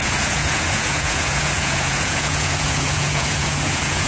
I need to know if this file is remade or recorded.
remade